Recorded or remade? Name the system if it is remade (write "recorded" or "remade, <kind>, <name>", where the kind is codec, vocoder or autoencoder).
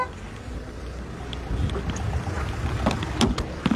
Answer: recorded